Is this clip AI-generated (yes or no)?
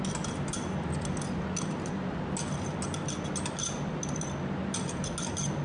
no